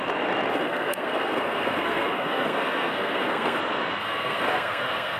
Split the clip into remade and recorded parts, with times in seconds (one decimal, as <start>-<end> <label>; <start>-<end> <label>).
0.0-0.5 recorded; 0.5-3.6 remade; 3.6-4.0 recorded; 4.0-5.2 remade